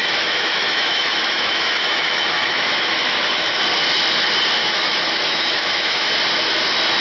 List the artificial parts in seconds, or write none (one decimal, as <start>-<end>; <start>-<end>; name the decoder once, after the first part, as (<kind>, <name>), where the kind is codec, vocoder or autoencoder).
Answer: 0.0-3.6 (autoencoder, DAC-VAE); 4.6-6.1